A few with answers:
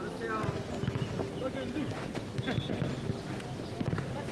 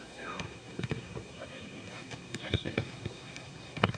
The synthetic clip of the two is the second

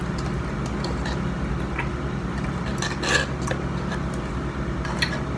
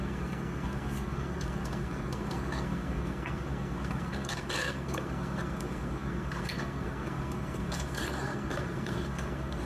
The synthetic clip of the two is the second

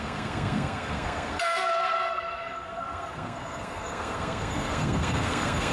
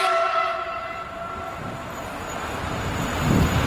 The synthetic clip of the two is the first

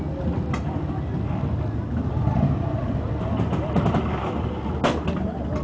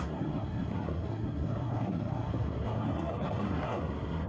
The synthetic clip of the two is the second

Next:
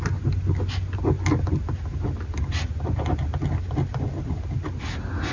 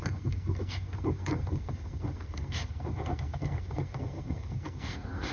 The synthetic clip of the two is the second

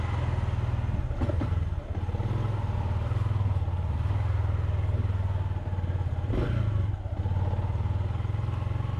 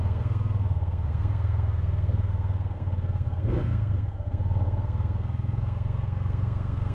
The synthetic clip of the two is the second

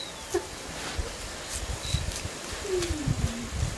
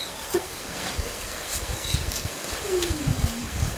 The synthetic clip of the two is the second